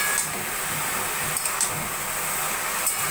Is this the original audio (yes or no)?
yes